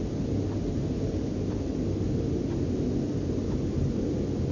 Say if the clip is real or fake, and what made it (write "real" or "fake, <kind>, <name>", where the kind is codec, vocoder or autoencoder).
real